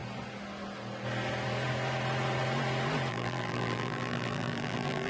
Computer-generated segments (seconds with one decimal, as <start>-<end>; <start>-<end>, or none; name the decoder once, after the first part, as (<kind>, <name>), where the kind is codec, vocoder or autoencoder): 3.1-5.1 (vocoder, BigVGAN v2)